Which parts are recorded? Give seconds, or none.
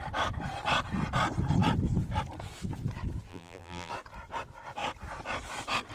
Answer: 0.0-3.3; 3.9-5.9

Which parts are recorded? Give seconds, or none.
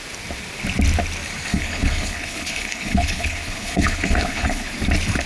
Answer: 0.0-1.5; 4.7-5.3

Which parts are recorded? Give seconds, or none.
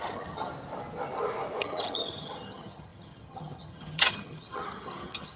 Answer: 0.5-1.6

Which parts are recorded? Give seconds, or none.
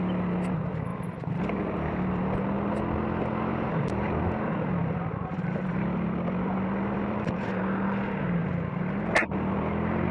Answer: 0.0-0.9; 2.2-3.5; 4.2-4.8; 7.5-10.1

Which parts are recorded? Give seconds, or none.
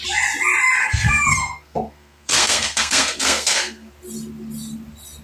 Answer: 0.0-0.8; 3.9-5.2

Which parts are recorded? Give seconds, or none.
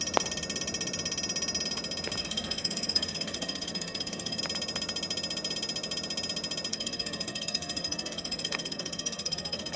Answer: 0.0-2.2; 4.4-6.7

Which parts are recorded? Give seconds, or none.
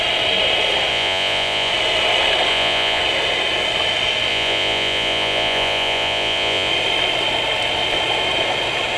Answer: 0.0-0.9; 1.7-2.5; 3.0-4.3; 6.7-9.0